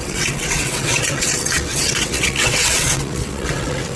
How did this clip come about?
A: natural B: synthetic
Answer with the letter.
B